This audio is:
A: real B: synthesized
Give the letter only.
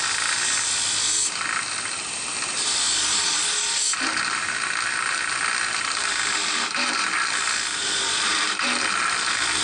B